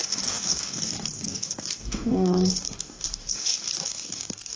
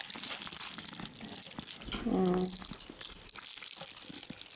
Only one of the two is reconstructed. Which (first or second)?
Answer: first